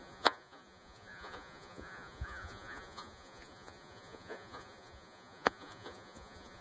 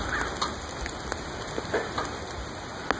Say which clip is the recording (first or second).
second